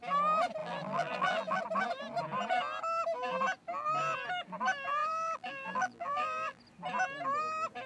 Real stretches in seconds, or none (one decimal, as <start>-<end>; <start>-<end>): 0.0-0.6; 1.6-5.0; 6.6-7.9